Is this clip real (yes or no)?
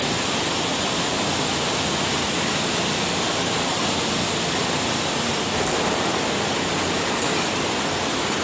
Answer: yes